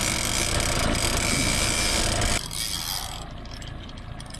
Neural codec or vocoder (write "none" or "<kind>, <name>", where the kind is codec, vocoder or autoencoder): none